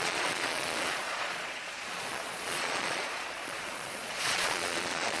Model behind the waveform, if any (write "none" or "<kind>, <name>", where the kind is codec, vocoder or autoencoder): vocoder, Vocos